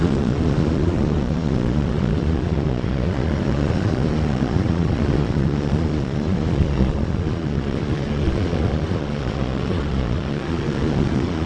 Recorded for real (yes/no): no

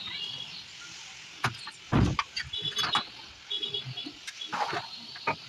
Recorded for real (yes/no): yes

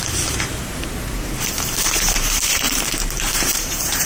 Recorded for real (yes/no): no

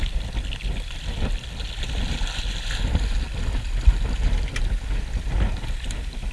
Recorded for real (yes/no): yes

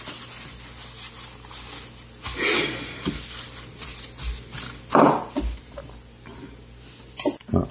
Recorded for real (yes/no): yes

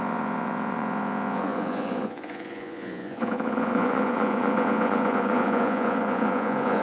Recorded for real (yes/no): no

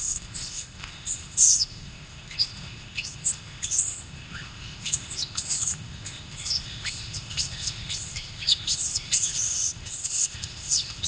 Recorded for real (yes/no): no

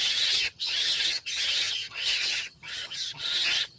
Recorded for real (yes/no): no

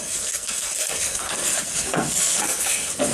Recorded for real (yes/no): no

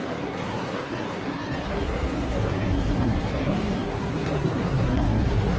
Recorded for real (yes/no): no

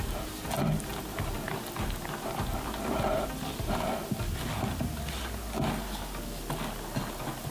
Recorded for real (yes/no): yes